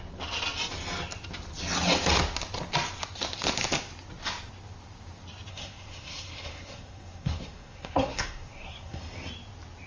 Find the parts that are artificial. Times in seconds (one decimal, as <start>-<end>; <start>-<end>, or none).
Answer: 5.5-9.0